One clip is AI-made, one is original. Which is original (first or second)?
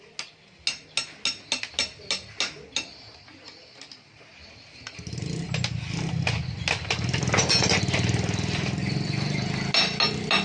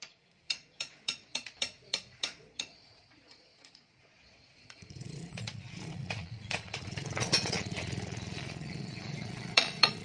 first